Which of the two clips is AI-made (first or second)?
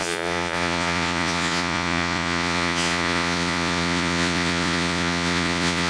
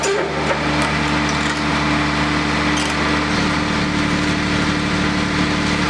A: first